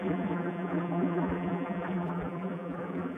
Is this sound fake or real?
fake